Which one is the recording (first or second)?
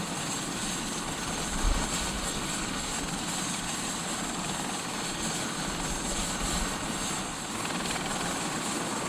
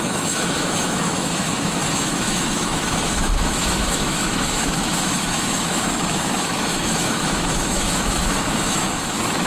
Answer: first